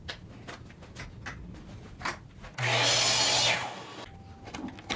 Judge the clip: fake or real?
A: real